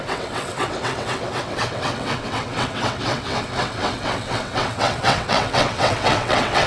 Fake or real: fake